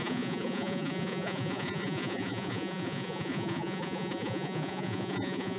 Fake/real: fake